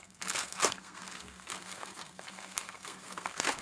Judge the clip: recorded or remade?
remade